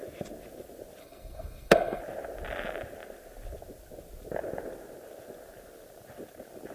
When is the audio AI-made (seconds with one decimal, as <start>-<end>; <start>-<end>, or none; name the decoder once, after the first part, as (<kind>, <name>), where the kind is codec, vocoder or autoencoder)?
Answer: 1.0-2.0 (codec, SNAC)